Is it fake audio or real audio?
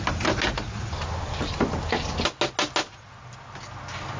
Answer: real